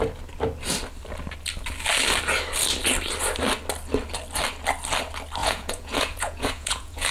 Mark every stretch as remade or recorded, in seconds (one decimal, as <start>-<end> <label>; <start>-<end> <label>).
0.0-5.4 recorded; 5.4-7.1 remade